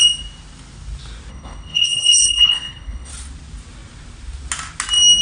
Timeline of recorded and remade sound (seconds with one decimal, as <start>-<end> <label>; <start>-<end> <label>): 0.0-1.3 recorded; 1.3-3.1 remade; 3.1-5.2 recorded